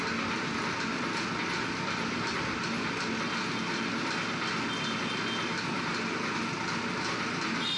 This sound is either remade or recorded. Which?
recorded